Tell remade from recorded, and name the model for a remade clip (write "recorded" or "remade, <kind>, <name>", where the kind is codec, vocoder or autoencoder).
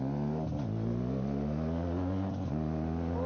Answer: recorded